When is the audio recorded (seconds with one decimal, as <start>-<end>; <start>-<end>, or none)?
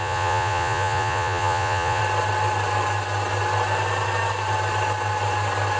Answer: 2.0-5.8